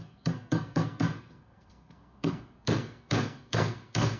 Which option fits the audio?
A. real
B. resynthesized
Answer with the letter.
B